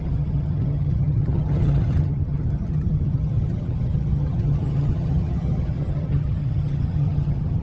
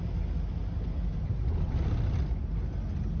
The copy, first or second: first